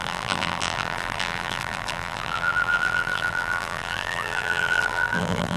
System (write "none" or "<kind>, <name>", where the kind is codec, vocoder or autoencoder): vocoder, BigVGAN v2